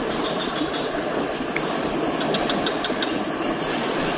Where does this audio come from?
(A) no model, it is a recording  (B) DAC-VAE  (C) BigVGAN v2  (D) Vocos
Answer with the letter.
A